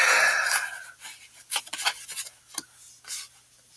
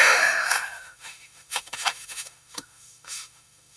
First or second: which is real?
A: first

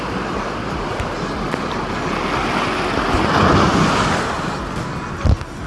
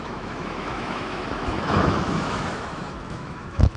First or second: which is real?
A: first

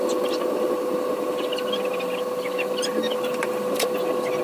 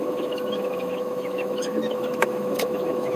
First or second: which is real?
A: first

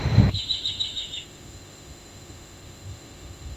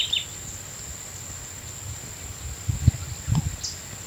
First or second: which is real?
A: second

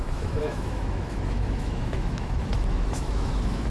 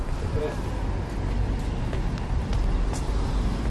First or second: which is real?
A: second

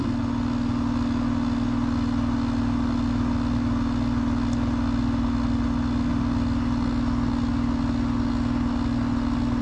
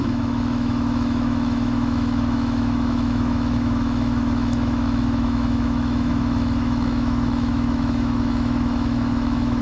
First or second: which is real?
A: first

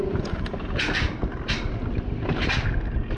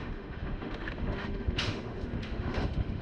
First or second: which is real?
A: first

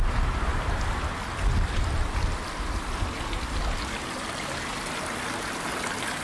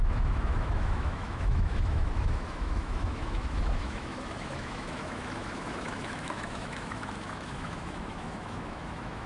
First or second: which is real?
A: first